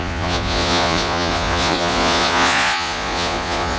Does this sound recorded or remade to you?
remade